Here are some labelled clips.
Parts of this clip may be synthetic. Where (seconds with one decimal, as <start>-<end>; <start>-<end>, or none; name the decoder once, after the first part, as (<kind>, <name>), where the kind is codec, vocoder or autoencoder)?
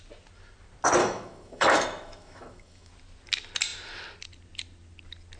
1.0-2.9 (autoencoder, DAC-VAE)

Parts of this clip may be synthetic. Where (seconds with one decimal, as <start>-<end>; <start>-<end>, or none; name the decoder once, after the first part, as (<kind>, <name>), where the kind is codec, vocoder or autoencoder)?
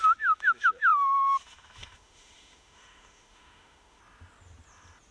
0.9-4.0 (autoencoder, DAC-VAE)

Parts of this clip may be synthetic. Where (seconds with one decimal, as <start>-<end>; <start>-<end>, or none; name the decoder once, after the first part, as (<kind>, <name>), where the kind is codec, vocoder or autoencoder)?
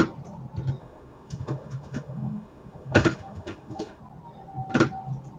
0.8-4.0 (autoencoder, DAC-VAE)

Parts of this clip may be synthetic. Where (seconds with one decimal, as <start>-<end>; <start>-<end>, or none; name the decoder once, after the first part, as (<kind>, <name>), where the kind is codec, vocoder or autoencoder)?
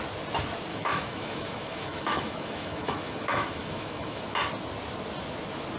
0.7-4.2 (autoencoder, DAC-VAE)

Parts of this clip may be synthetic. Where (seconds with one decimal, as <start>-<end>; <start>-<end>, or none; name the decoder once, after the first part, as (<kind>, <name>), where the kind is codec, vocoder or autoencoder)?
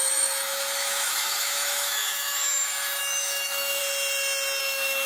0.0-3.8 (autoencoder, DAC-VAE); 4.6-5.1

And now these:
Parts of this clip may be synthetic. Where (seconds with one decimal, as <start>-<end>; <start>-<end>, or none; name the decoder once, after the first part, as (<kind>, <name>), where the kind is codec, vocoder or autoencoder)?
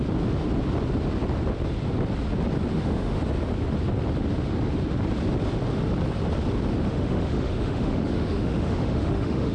2.7-3.2 (autoencoder, DAC-VAE); 6.9-9.5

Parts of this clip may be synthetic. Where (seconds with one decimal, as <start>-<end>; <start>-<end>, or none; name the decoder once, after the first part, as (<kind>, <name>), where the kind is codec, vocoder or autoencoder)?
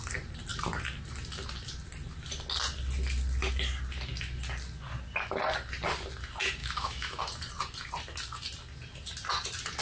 6.6-7.2 (autoencoder, DAC-VAE)